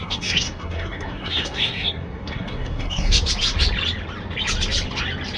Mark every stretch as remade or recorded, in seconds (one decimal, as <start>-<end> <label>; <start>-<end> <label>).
0.0-3.2 remade; 3.2-5.4 recorded